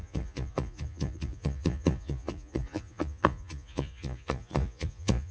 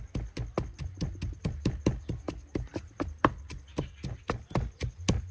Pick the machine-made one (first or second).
first